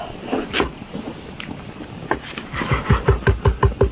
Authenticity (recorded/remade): recorded